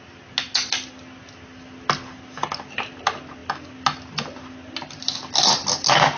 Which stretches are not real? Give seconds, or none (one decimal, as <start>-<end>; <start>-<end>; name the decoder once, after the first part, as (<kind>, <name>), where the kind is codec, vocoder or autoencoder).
none